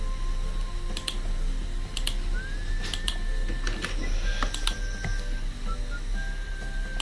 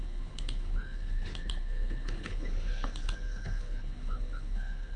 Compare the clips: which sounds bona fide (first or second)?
first